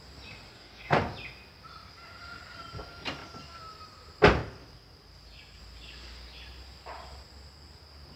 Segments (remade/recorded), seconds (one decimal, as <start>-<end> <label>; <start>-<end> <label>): 0.0-0.5 recorded; 0.5-1.0 remade; 1.0-8.2 recorded